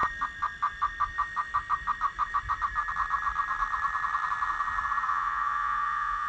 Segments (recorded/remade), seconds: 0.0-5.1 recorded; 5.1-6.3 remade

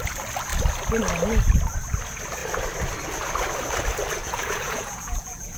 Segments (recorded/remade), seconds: 0.0-4.2 recorded; 4.2-5.6 remade